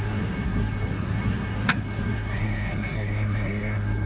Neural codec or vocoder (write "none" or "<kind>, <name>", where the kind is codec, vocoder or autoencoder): codec, SNAC